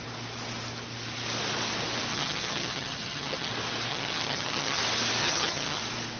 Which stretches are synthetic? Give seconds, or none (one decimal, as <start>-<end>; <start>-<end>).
2.1-3.5; 3.9-4.8; 5.2-5.8